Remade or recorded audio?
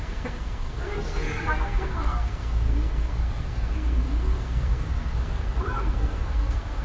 remade